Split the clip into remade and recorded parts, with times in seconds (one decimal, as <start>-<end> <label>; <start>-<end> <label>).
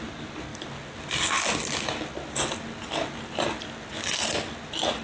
0.0-5.0 recorded